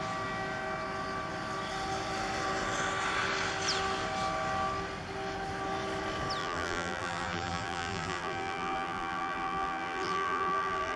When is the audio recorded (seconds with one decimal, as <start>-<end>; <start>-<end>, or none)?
0.0-6.4